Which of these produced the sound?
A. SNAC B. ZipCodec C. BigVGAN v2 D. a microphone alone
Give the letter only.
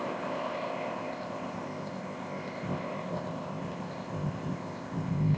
B